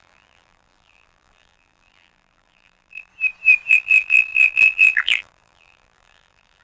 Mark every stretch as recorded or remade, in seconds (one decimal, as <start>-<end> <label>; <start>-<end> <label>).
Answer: 0.0-3.1 remade; 3.1-3.7 recorded; 3.7-6.6 remade